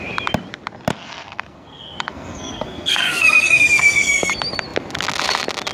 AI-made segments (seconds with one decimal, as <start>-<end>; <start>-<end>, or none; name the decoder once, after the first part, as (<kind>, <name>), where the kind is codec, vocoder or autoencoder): 0.9-4.3 (codec, SNAC)